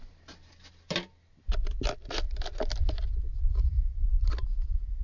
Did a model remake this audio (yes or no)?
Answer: no